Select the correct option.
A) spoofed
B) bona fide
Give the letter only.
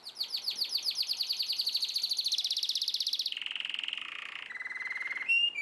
B